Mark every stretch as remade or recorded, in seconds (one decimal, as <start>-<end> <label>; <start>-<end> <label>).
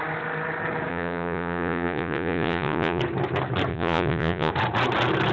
0.0-0.9 recorded; 0.9-3.0 remade; 3.0-3.7 recorded; 3.7-4.5 remade; 4.5-5.3 recorded